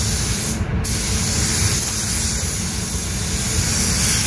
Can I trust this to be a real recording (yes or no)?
yes